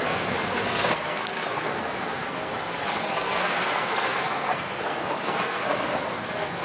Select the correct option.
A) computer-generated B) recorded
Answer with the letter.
A